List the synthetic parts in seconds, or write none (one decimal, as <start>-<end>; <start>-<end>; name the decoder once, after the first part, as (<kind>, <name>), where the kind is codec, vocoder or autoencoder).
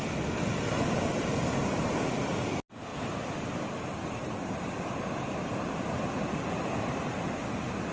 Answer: none